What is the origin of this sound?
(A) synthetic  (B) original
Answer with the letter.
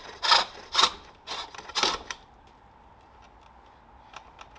B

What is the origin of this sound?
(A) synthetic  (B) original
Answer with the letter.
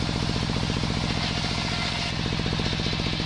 B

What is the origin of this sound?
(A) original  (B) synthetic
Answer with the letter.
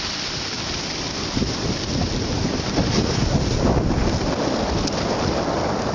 A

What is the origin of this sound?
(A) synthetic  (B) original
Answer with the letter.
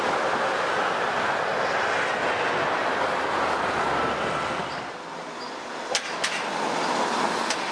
B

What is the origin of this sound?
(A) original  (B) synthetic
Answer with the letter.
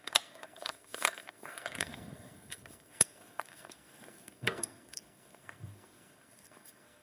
B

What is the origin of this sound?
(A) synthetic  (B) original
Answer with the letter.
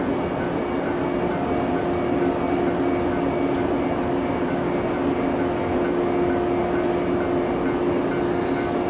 B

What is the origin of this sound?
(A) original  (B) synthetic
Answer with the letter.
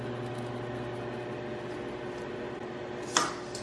A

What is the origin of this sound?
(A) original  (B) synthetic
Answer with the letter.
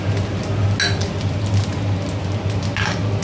A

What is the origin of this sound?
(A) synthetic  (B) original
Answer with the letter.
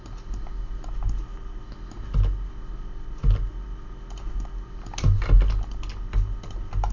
B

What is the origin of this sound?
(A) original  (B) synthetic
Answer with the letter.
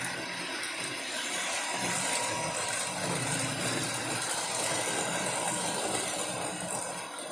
A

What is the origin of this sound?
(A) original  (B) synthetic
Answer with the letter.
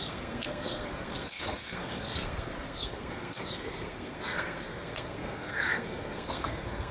B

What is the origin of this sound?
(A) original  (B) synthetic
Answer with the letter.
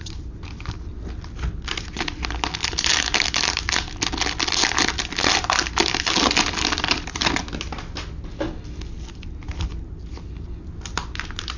A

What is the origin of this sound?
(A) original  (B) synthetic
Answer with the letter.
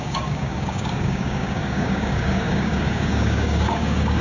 B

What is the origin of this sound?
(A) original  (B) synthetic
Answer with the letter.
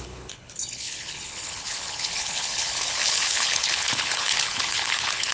B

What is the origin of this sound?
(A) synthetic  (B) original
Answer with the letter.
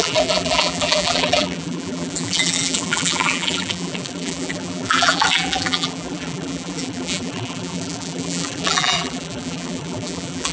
A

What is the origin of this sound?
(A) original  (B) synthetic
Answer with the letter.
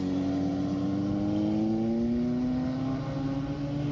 A